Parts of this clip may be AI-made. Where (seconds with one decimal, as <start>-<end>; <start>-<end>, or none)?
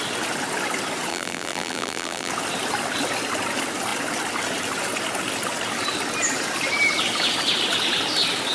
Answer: 1.1-2.3